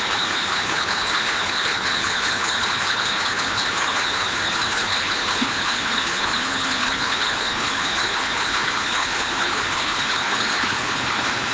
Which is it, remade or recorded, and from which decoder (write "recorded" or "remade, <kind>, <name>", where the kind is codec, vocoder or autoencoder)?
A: remade, codec, HILCodec